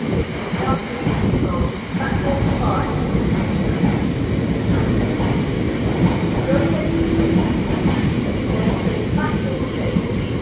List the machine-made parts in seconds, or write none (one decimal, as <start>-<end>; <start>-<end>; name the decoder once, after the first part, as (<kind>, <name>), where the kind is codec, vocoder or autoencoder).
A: none